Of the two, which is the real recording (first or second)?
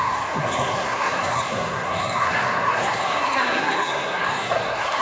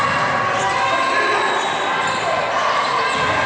second